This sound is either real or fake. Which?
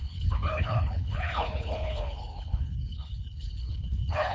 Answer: fake